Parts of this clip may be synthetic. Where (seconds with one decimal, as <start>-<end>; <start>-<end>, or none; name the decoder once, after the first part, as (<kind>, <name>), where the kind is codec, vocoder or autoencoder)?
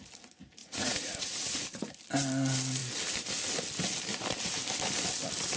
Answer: 0.6-1.9 (vocoder, Vocos)